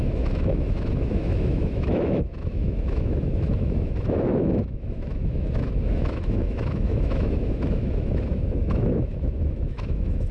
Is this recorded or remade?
remade